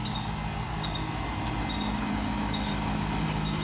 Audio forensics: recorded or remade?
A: recorded